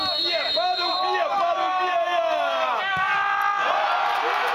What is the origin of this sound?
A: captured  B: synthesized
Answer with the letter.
A